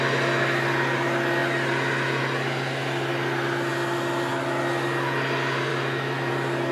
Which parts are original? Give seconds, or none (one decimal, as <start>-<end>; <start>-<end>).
0.0-5.7; 6.3-6.7